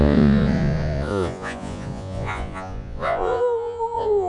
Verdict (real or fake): fake